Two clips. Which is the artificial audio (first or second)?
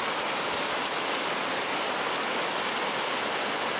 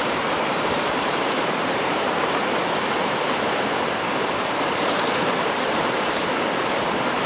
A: second